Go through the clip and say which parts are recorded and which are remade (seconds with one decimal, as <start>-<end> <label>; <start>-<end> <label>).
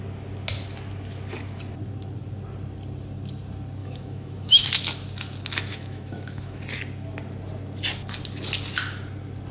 0.0-3.8 recorded; 3.8-4.7 remade; 4.7-5.7 recorded; 5.7-6.6 remade; 6.6-9.5 recorded